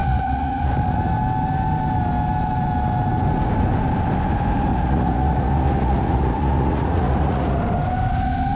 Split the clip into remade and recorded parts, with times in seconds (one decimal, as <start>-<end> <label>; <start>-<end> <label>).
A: 0.0-0.7 remade; 0.7-4.7 recorded; 4.7-7.6 remade; 7.6-8.6 recorded